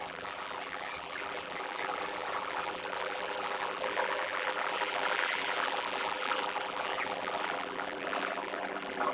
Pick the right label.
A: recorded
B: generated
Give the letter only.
B